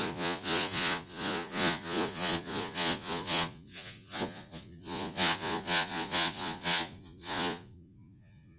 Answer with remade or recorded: remade